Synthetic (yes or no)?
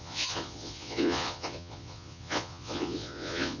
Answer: yes